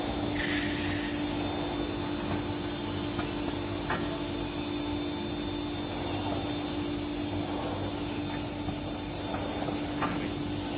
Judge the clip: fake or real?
real